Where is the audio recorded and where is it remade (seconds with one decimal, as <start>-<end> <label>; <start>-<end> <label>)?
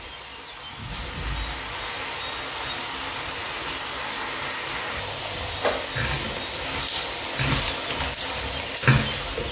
0.0-9.5 recorded